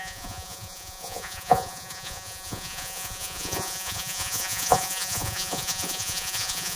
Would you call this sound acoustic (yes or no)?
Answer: no